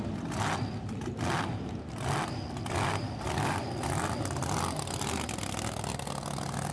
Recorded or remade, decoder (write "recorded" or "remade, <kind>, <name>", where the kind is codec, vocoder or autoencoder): recorded